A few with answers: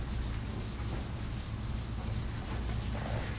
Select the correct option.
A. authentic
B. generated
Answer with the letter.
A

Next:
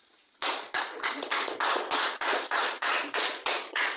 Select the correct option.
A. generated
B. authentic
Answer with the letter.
A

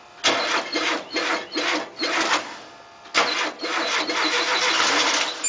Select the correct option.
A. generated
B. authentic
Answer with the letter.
B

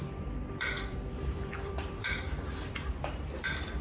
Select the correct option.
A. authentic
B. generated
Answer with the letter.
B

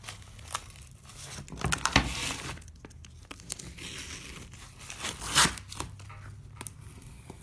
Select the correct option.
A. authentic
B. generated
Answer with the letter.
A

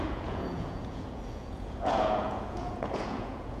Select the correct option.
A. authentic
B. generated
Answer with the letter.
B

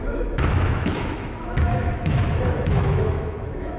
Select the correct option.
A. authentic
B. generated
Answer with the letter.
B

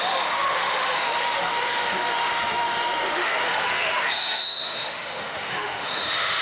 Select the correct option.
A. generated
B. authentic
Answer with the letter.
A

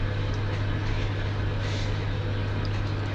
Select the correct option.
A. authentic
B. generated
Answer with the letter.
A